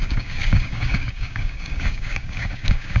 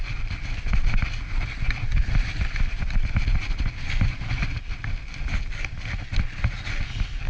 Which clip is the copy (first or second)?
first